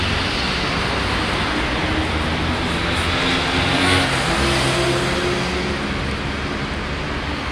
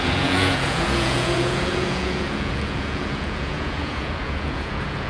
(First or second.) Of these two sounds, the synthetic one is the second